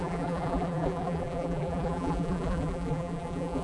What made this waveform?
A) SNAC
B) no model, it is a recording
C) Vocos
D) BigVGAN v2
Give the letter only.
D